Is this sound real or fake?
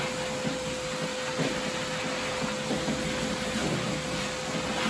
real